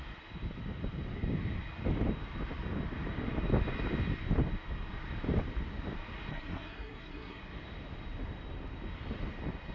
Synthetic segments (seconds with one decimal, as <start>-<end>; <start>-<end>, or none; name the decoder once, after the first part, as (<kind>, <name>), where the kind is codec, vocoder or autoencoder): 6.3-7.4 (codec, SNAC)